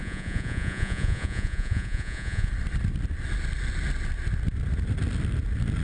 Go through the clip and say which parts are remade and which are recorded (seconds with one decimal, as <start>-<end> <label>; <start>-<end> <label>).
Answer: 0.0-2.5 remade; 2.5-5.8 recorded